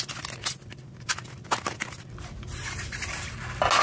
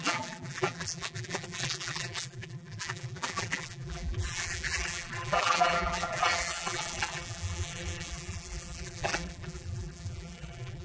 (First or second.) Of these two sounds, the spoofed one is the second